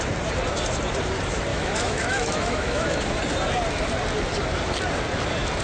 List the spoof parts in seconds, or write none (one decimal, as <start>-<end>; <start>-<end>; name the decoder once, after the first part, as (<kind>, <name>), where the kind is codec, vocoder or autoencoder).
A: 1.5-3.2 (autoencoder, DAC-VAE)